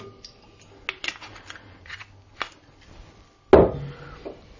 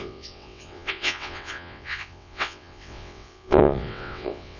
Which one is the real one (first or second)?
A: first